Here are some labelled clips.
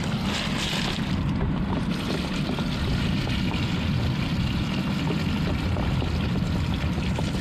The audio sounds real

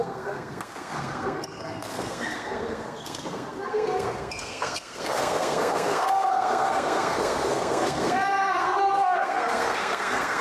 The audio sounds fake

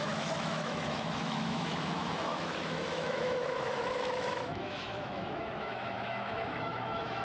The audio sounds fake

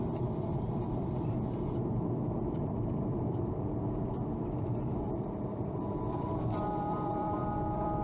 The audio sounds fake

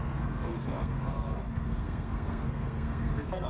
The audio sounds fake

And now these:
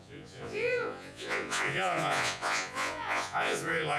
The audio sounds fake